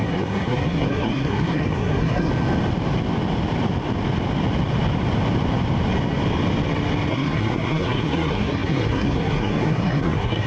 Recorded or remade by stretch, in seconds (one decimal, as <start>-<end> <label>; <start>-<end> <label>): 0.0-2.3 remade; 2.3-7.1 recorded; 7.1-10.5 remade